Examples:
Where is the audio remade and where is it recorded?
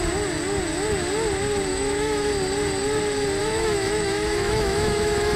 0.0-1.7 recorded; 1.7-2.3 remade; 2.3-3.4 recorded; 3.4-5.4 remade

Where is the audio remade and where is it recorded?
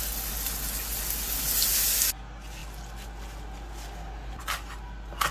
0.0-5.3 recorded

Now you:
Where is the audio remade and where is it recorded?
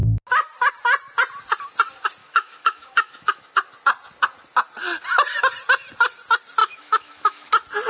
0.0-2.2 recorded; 2.2-3.5 remade; 3.5-6.6 recorded; 6.6-7.5 remade; 7.5-7.9 recorded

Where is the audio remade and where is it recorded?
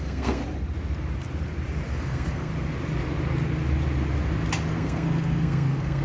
0.0-0.4 remade; 0.4-1.9 recorded; 1.9-2.5 remade; 2.5-4.7 recorded; 4.7-6.0 remade